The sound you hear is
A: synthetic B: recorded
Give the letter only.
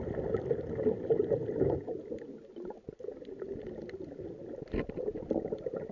B